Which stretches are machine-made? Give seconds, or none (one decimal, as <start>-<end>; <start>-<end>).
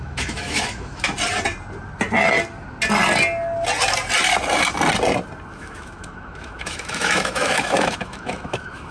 0.0-1.1; 5.5-8.9